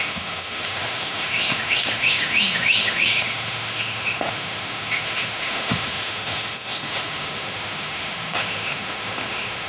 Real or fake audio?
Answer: fake